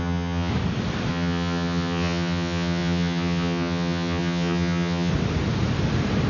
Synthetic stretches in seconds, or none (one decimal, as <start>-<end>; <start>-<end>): 0.0-0.5; 1.1-5.1